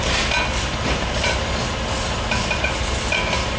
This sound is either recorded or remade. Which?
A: recorded